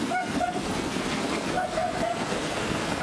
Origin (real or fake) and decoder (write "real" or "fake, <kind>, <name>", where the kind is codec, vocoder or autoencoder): fake, codec, SNAC